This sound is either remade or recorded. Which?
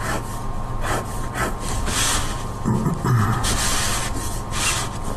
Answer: recorded